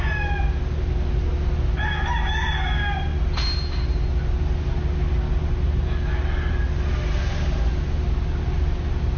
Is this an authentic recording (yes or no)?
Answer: yes